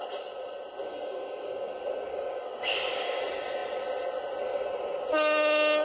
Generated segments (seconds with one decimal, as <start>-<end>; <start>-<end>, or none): 0.9-1.7; 2.1-3.2